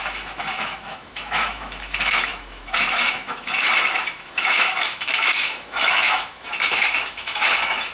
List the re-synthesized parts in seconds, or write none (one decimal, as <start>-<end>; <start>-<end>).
0.0-7.9